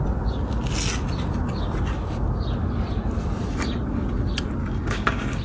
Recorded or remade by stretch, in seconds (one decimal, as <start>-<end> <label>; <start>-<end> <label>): 0.0-4.6 recorded; 4.6-5.4 remade